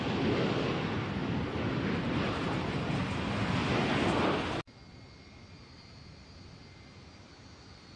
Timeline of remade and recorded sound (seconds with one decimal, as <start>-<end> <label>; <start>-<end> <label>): 0.0-8.0 recorded